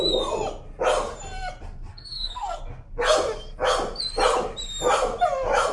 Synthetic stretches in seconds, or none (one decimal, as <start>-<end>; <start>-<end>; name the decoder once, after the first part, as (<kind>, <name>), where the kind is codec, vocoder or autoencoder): 1.9-2.6 (codec, SNAC)